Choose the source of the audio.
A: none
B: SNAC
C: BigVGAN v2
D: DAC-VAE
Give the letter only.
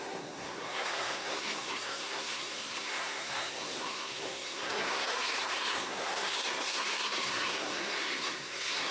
B